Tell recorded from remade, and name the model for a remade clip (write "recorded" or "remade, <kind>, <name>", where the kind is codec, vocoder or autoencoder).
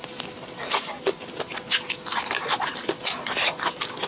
recorded